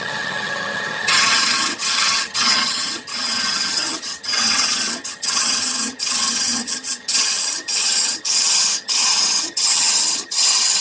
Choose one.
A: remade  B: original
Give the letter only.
A